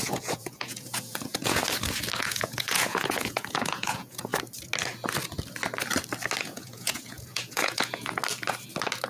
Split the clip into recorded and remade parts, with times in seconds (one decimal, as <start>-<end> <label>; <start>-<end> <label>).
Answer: 0.0-1.6 remade; 1.6-2.2 recorded; 2.2-4.3 remade; 4.3-6.4 recorded; 6.4-8.2 remade; 8.2-9.1 recorded